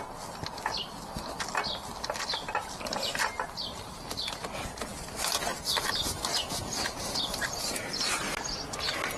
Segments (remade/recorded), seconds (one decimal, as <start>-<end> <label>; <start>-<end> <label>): 0.0-9.2 recorded

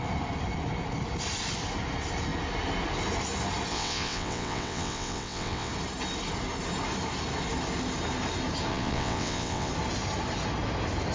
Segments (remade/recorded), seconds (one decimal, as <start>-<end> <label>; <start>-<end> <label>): 0.0-3.7 recorded; 3.7-5.7 remade; 5.7-8.7 recorded; 8.7-9.7 remade; 9.7-11.1 recorded

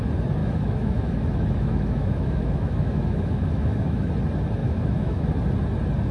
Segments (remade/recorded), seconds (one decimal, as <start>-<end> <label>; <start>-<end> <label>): 0.0-0.4 recorded; 0.4-4.1 remade; 4.1-4.6 recorded; 4.6-5.4 remade; 5.4-6.1 recorded

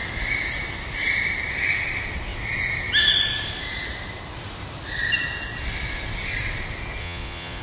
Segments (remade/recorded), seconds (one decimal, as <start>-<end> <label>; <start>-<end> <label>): 0.0-7.0 recorded; 7.0-7.6 remade

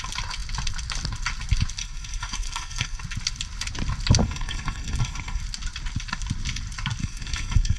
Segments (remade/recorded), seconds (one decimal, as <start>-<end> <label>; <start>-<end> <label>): 0.0-1.8 recorded; 1.8-3.0 remade; 3.0-4.2 recorded; 4.2-5.4 remade; 5.4-7.0 recorded; 7.0-7.8 remade

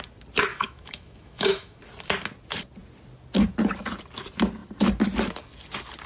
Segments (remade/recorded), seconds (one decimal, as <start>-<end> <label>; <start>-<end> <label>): 0.0-0.5 recorded; 0.5-1.8 remade; 1.8-6.1 recorded